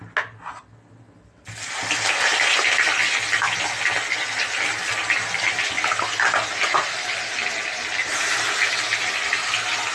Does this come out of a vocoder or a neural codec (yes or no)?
no